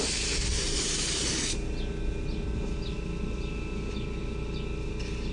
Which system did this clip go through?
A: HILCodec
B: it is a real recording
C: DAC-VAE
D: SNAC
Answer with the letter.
B